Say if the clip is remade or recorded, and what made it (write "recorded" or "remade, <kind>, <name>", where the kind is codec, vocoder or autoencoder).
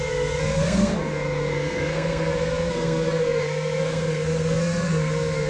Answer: remade, codec, SNAC